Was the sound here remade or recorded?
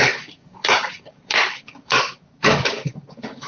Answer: remade